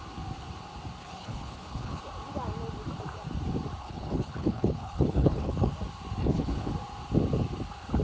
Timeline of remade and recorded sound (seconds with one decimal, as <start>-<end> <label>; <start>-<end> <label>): 0.0-1.0 recorded; 1.0-2.0 remade; 2.0-3.8 recorded; 3.8-5.7 remade; 5.7-6.2 recorded; 6.2-6.7 remade; 6.7-8.0 recorded